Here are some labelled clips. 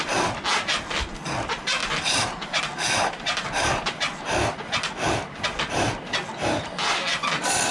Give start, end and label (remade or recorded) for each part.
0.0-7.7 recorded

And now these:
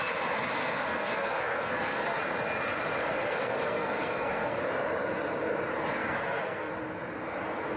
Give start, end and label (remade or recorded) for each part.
0.0-0.6 recorded; 0.6-2.2 remade; 2.2-3.0 recorded; 3.0-4.6 remade; 4.6-6.0 recorded; 6.0-6.7 remade; 6.7-7.8 recorded

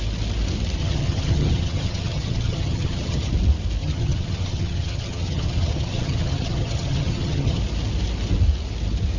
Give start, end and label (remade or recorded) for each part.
0.0-0.8 recorded; 0.8-3.3 remade; 3.3-3.8 recorded; 3.8-7.6 remade; 7.6-9.2 recorded

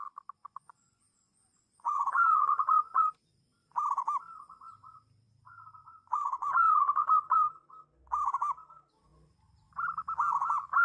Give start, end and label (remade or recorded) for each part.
0.0-0.4 recorded; 0.4-3.1 remade; 3.1-5.8 recorded; 5.8-7.5 remade; 7.5-10.8 recorded